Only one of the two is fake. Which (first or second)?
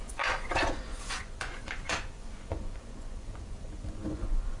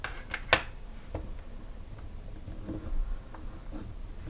first